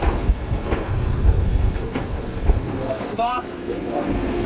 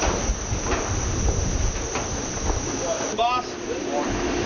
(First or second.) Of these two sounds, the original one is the second